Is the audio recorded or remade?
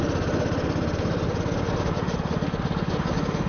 recorded